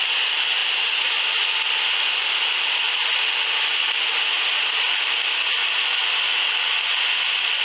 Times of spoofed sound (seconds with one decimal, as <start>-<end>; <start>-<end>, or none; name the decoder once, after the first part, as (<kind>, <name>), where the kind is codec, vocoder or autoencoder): none